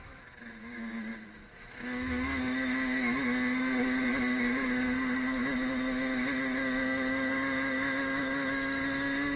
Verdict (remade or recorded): remade